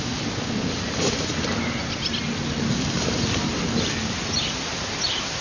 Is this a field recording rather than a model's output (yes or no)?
yes